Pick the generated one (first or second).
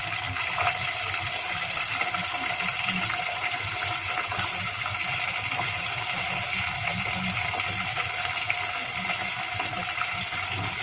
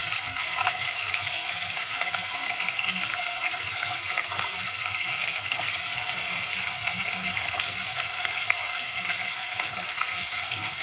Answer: second